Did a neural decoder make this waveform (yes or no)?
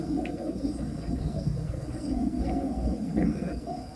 yes